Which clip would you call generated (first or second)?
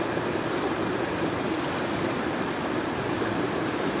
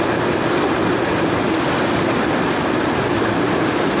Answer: first